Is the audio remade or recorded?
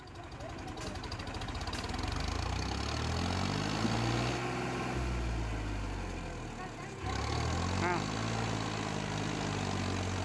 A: recorded